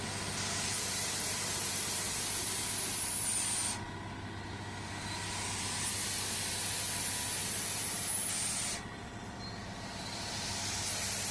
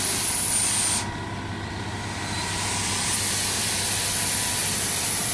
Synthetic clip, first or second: second